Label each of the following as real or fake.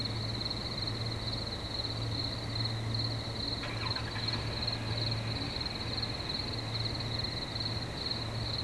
real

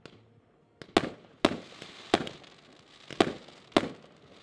real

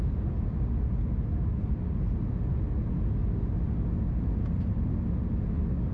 real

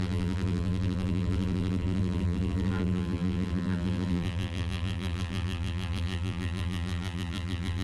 fake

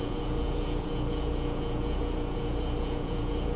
fake